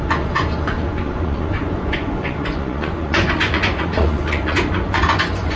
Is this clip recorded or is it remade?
remade